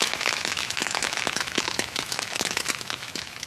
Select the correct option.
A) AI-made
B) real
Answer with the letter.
A